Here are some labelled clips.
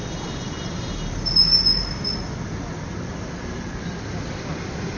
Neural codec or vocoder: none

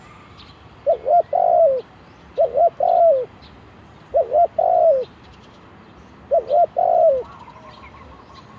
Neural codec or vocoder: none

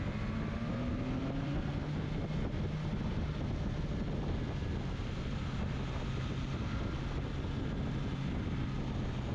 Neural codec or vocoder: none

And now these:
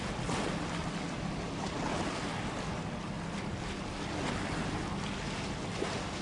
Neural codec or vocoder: none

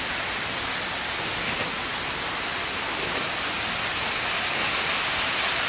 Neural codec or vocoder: none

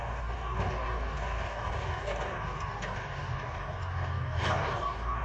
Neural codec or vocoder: codec, DAC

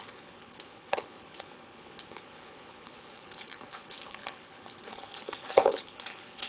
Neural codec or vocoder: codec, HILCodec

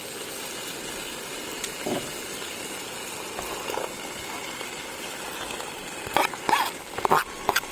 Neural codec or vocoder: none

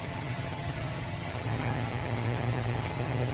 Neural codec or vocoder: vocoder, HiFi-GAN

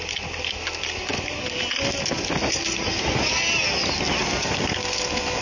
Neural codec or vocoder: none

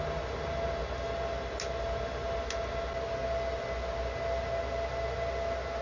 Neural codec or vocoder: none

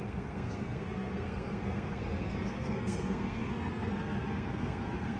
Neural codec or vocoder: codec, SNAC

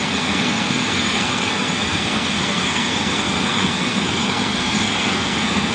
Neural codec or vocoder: codec, SNAC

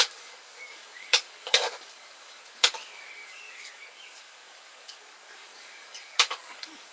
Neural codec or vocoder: codec, DAC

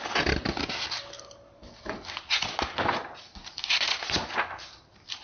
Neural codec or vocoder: none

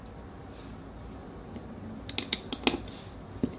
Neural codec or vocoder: none